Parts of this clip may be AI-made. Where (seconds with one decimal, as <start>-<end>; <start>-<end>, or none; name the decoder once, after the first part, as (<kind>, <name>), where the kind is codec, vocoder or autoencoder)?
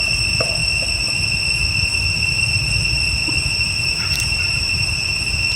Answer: none